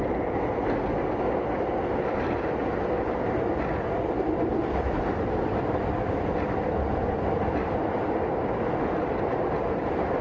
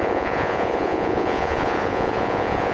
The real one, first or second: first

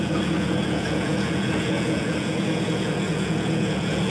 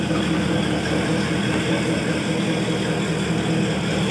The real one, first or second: second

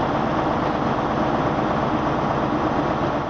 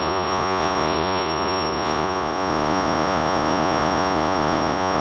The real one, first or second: first